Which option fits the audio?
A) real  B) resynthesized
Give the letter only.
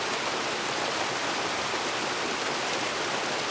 A